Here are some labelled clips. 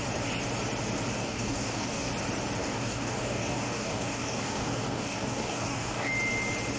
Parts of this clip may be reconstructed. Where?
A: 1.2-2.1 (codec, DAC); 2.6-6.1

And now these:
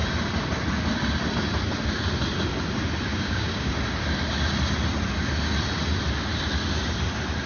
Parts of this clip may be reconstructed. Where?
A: 3.1-3.7 (codec, DAC)

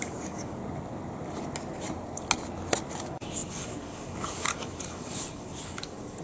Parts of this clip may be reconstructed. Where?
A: 0.0-0.6 (codec, DAC); 3.0-6.2

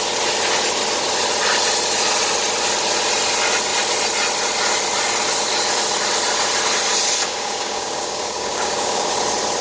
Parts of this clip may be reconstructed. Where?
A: 7.3-9.1 (codec, DAC)

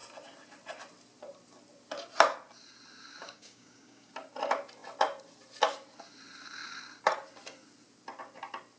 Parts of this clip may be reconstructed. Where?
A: 3.2-4.1 (codec, DAC)

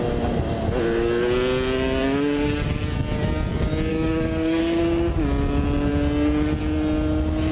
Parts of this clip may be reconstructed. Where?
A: 3.9-4.6 (codec, DAC)

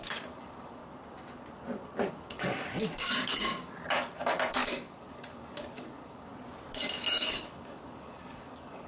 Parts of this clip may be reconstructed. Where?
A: 0.0-0.8 (codec, DAC); 2.1-6.3; 7.1-8.9

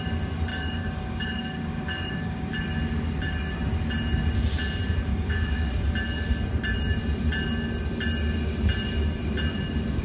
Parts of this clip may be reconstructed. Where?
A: 0.5-2.5 (codec, DAC); 5.1-5.7